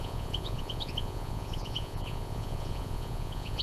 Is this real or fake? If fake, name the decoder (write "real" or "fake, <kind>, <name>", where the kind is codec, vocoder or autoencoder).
fake, vocoder, Vocos